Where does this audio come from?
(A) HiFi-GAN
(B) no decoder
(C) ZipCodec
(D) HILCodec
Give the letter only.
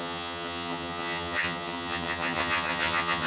A